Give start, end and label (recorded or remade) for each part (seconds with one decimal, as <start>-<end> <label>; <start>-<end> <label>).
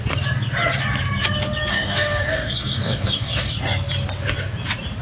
0.0-1.7 recorded; 1.7-3.6 remade; 3.6-5.0 recorded